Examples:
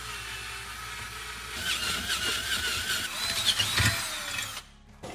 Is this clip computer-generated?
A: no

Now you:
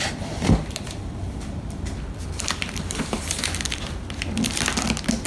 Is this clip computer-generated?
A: yes